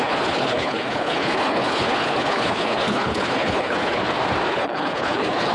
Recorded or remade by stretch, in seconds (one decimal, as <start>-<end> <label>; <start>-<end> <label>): 0.0-4.0 remade; 4.0-4.5 recorded; 4.5-5.5 remade

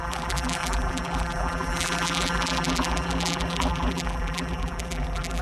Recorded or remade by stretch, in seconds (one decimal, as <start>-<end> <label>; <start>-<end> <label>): 0.0-5.4 remade

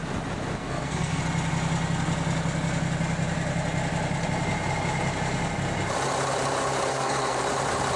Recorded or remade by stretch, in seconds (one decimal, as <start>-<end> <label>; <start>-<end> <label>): 0.0-0.6 recorded; 0.6-1.2 remade; 1.2-6.9 recorded; 6.9-7.4 remade; 7.4-8.0 recorded

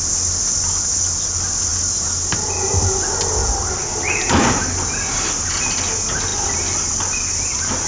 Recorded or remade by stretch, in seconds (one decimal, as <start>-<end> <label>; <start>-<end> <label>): 0.0-7.9 recorded

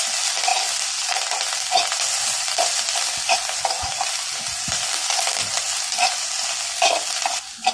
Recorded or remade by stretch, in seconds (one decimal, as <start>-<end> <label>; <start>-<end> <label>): 0.0-7.7 recorded

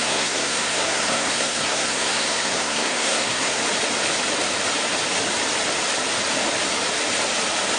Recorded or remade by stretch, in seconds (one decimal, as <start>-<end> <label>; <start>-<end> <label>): 0.0-3.6 remade; 3.6-7.8 recorded

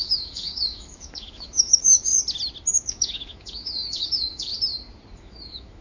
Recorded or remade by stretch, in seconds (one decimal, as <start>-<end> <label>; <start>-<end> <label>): 0.0-2.1 remade; 2.1-2.7 recorded; 2.7-4.5 remade; 4.5-5.2 recorded; 5.2-5.8 remade

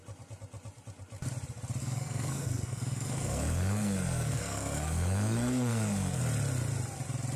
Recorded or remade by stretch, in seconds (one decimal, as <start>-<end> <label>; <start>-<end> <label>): 0.0-1.8 recorded; 1.8-6.2 remade; 6.2-7.4 recorded